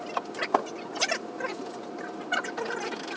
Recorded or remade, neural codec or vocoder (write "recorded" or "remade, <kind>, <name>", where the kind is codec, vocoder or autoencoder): recorded